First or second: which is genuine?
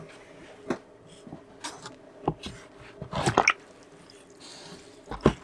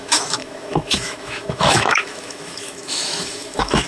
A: first